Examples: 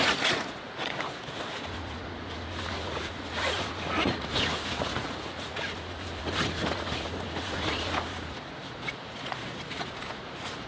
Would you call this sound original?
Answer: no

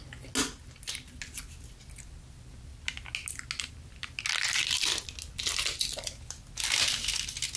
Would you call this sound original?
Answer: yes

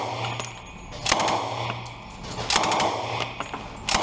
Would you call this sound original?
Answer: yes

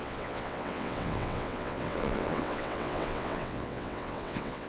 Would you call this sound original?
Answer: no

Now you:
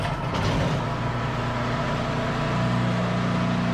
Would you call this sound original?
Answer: yes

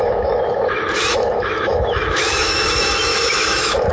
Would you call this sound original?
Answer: no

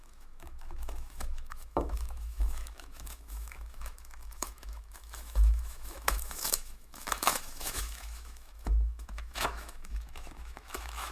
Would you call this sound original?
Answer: no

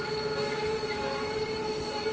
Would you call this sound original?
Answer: yes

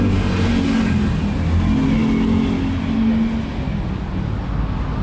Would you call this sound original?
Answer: yes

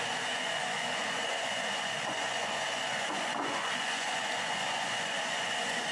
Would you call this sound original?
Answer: no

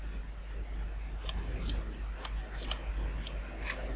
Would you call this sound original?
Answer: yes